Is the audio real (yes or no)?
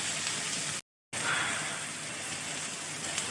yes